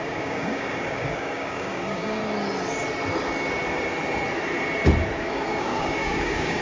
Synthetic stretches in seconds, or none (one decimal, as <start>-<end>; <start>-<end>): 0.0-2.2; 5.2-6.6